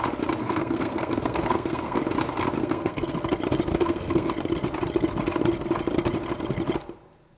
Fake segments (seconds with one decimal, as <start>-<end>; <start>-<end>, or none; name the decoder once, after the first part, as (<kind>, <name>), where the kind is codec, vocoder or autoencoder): 0.4-2.0 (codec, SNAC); 2.6-3.1; 3.7-4.3